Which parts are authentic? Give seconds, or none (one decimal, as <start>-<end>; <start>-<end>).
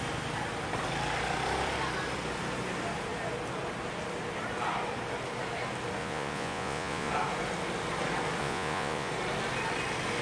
0.0-6.0; 7.1-8.4; 9.1-10.2